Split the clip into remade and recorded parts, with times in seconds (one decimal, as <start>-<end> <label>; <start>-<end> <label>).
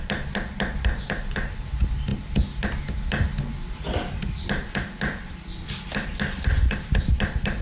0.0-7.6 recorded